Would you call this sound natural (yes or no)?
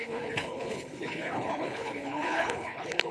no